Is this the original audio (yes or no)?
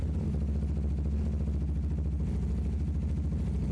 yes